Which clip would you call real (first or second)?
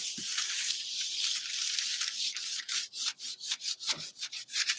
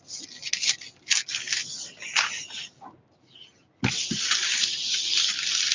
second